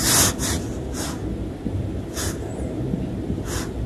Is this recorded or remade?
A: recorded